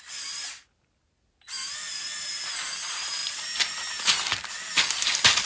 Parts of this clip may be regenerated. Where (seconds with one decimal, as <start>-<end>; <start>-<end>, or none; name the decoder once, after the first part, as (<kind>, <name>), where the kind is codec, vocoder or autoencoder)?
none